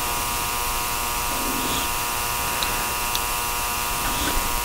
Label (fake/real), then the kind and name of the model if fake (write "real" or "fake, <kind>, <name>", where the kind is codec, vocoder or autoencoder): fake, vocoder, BigVGAN v2